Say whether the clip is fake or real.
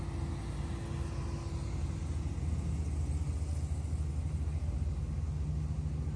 real